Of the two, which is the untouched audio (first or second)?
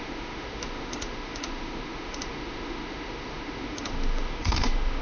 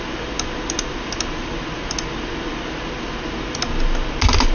second